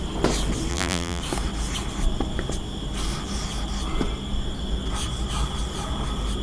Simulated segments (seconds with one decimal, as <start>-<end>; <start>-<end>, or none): 0.7-1.2